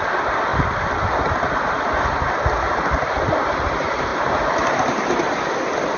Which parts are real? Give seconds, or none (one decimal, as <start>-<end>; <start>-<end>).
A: 0.0-6.0

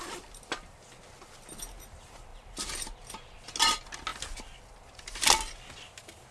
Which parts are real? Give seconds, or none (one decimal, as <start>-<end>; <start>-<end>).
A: 0.0-6.3

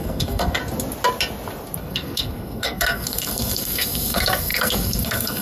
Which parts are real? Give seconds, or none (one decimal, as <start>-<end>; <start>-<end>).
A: 0.6-1.8

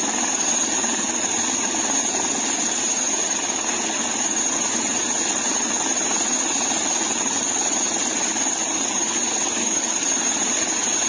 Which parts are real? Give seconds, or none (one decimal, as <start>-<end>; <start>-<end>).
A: 0.0-11.1

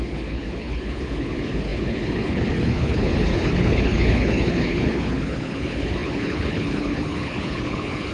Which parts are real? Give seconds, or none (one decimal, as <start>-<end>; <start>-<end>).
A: none